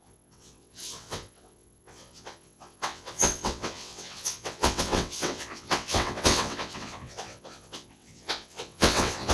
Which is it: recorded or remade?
remade